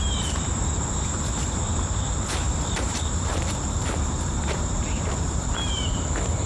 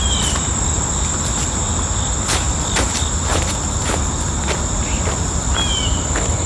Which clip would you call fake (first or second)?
first